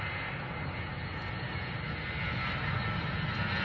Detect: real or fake real